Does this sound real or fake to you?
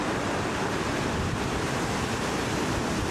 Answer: real